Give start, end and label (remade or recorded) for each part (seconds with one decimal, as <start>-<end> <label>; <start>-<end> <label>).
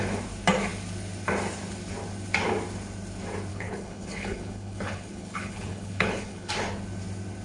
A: 0.0-3.5 recorded; 3.5-6.5 remade; 6.5-7.4 recorded